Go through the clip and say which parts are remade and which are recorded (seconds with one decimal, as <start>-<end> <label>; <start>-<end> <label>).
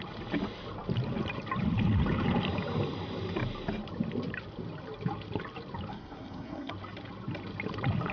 0.0-5.9 recorded; 5.9-6.7 remade; 6.7-8.1 recorded